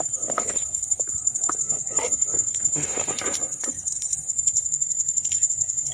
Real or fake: fake